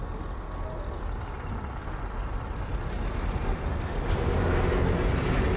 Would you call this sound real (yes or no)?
yes